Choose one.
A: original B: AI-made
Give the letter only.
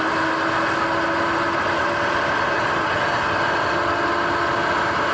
A